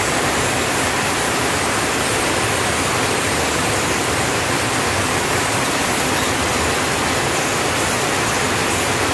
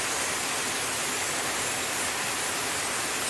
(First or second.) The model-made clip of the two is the first